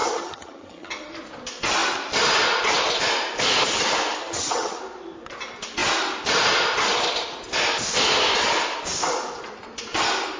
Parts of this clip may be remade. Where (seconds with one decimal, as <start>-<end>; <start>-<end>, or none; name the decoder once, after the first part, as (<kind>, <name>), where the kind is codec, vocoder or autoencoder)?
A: 0.0-0.9 (vocoder, HiFi-GAN); 4.2-4.8

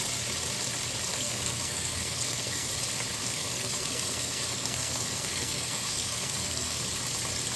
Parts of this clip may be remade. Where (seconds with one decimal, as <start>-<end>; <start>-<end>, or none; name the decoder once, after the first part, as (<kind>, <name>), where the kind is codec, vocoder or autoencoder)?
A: 1.1-2.7 (codec, SNAC); 3.2-6.8

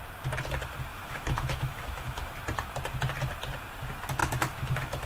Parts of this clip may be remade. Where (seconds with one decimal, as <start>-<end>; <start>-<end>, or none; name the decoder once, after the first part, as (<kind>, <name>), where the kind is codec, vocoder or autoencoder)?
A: 0.9-2.3 (autoencoder, DAC-VAE); 4.2-5.1

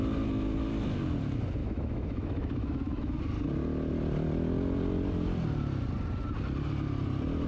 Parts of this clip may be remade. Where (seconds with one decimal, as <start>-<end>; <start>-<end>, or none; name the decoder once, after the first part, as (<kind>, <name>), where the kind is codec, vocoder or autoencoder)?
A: 1.6-3.2 (autoencoder, DAC-VAE)

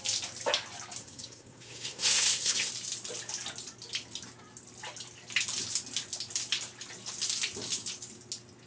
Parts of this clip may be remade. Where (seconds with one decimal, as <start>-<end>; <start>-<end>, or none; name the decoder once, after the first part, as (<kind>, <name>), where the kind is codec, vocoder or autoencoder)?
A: 1.0-2.7 (codec, SNAC)

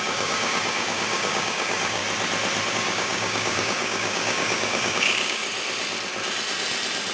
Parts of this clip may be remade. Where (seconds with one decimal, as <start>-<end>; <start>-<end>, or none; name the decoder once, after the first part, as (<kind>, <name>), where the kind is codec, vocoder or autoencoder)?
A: 0.0-2.0 (codec, DAC); 2.7-5.4

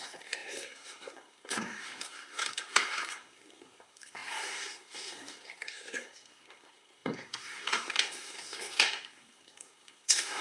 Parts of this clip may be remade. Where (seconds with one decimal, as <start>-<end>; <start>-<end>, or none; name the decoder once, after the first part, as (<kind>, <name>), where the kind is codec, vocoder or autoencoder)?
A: 0.0-10.4 (codec, SNAC)

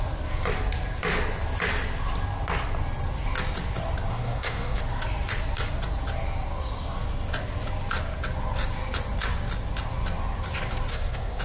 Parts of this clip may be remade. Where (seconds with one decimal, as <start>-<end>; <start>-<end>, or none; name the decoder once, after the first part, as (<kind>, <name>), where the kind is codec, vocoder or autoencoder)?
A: 4.1-4.8 (codec, SNAC); 10.9-11.4